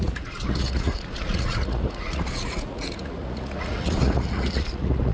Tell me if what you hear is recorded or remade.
remade